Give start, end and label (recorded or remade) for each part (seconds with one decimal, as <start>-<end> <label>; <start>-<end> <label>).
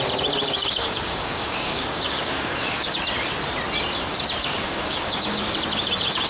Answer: 0.0-0.4 recorded; 0.4-3.0 remade; 3.0-4.4 recorded; 4.4-5.4 remade; 5.4-6.3 recorded